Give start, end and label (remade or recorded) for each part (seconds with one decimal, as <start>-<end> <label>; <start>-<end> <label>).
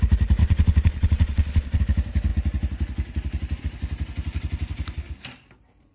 0.0-0.4 recorded; 0.4-1.8 remade; 1.8-5.9 recorded